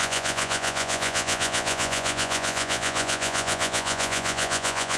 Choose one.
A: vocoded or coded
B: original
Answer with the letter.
A